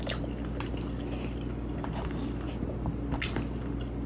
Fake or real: real